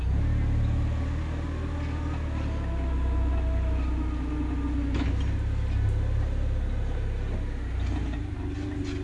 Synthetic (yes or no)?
no